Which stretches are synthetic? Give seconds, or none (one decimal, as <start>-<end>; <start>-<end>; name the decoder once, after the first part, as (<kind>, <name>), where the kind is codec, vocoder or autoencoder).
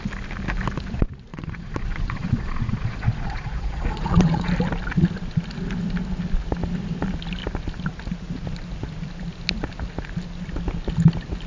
1.3-4.5 (vocoder, Vocos)